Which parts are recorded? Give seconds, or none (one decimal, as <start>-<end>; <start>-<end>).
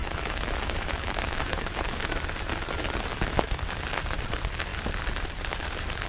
2.1-3.1; 3.8-6.1